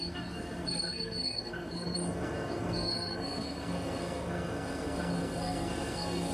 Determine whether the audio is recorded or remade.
remade